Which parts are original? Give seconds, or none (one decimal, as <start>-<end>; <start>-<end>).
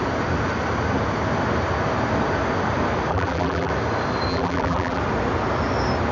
0.0-3.1; 3.7-4.3; 5.0-6.1